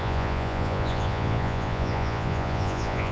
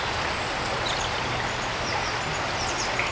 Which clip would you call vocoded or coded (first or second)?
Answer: first